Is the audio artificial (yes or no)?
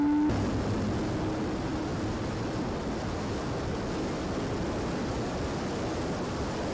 no